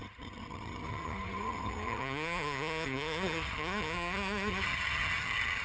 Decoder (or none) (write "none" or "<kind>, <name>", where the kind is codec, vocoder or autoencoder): vocoder, HiFi-GAN